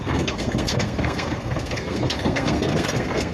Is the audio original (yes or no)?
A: no